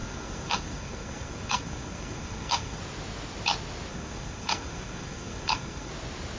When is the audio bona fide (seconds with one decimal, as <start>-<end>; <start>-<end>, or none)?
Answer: 2.8-3.9; 5.9-6.4

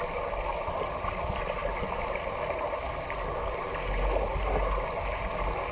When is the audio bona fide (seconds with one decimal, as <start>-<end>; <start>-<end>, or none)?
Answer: 0.0-5.7

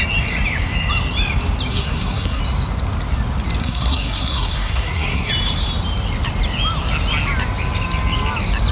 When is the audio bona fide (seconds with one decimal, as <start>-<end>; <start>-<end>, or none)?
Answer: 0.0-1.7; 2.4-3.6; 5.3-8.7

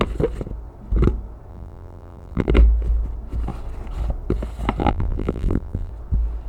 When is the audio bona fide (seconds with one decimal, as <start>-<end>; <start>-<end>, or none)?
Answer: 0.0-1.5; 2.5-4.8; 5.9-6.5

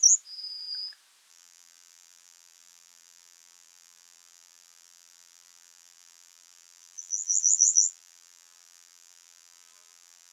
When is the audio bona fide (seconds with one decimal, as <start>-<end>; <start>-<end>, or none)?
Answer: 0.0-1.3